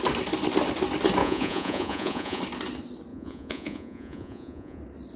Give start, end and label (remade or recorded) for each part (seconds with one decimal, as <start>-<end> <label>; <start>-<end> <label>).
0.0-1.2 recorded; 1.2-2.4 remade; 2.4-3.1 recorded; 3.1-4.8 remade; 4.8-5.2 recorded